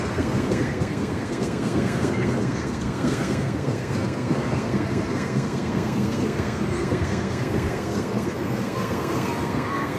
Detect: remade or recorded remade